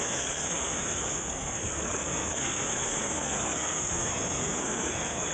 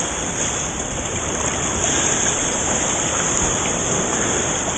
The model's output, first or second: first